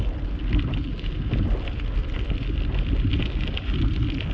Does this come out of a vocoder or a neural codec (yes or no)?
no